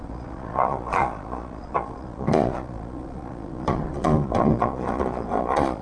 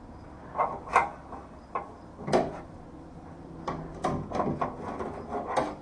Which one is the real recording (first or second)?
second